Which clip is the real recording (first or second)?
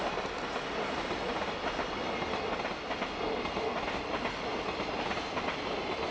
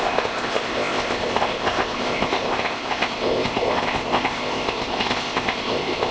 first